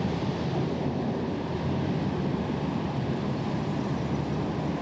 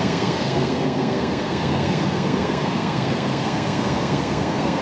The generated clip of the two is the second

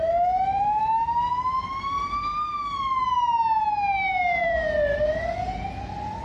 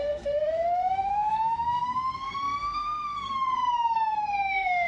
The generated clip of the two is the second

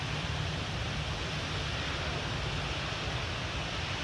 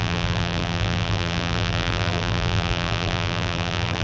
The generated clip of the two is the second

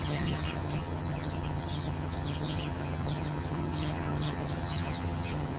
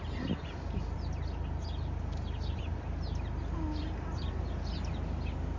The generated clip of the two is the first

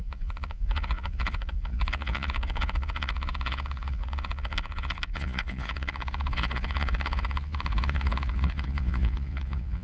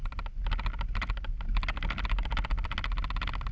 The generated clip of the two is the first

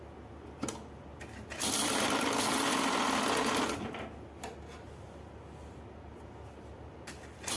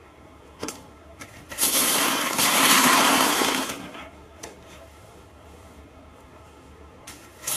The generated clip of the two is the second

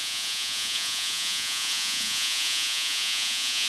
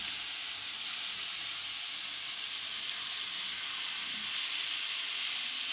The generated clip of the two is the first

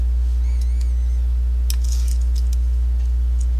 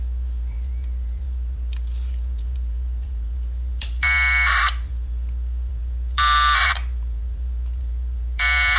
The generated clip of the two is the second